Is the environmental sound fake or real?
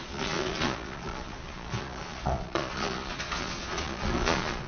fake